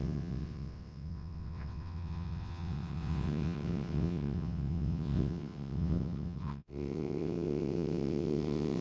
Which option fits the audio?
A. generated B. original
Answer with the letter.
A